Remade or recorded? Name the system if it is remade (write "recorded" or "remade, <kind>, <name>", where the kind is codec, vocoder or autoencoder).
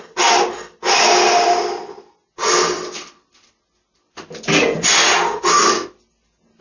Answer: recorded